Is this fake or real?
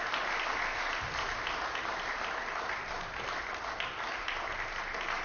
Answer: real